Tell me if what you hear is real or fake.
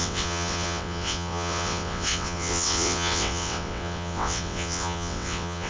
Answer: fake